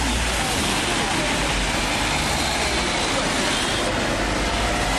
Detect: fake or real real